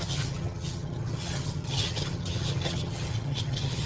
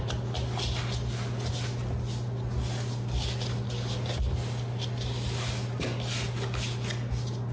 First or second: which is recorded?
second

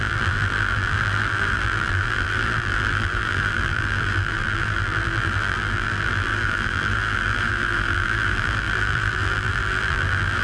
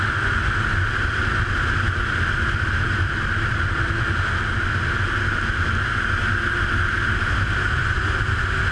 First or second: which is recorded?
second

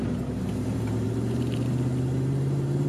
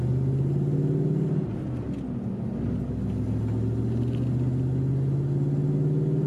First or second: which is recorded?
second